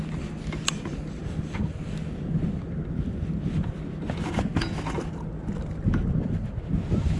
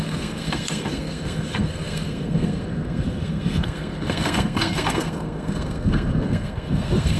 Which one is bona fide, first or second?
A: first